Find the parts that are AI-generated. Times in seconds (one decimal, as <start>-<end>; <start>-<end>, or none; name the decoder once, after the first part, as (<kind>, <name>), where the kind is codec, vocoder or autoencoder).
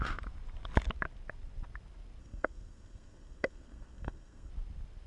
2.2-4.5 (codec, SNAC)